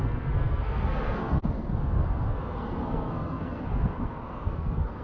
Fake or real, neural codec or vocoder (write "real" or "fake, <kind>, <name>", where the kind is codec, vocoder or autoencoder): fake, codec, SNAC